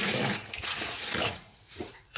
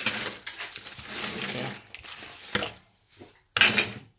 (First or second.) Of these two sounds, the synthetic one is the first